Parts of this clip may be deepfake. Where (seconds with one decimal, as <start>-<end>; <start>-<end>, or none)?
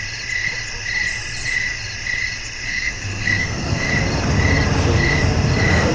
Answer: 2.7-3.9